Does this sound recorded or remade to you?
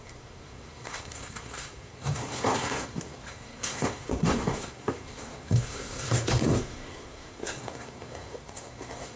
remade